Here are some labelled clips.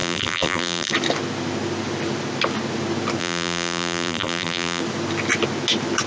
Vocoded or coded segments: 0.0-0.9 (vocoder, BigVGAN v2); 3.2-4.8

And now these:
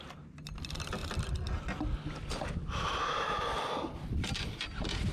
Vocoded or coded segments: none

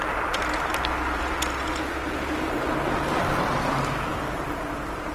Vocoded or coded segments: 4.1-5.1 (vocoder, BigVGAN v2)